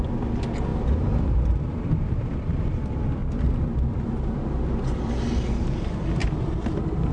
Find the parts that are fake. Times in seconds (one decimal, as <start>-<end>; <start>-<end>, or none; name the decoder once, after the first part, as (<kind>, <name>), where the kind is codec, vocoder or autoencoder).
0.7-2.8 (vocoder, BigVGAN v2); 3.2-4.4; 6.2-7.1